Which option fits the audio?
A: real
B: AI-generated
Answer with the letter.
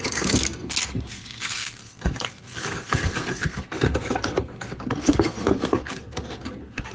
B